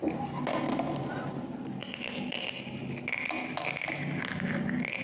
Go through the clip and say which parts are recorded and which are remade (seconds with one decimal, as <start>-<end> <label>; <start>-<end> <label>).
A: 0.0-5.0 recorded

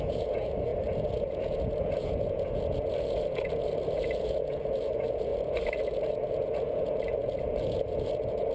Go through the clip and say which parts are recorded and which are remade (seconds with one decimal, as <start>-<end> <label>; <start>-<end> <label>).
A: 0.0-8.5 remade

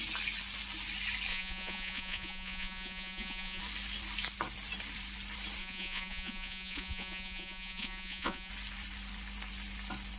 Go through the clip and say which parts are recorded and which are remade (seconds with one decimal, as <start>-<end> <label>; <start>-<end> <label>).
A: 0.0-1.3 recorded; 1.3-3.6 remade; 3.6-5.6 recorded; 5.6-8.5 remade; 8.5-10.2 recorded

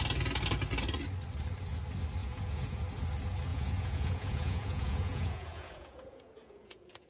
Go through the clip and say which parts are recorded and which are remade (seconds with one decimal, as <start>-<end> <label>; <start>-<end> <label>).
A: 0.0-2.2 recorded; 2.2-2.8 remade; 2.8-3.5 recorded; 3.5-7.1 remade